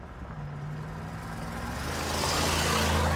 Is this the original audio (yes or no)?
yes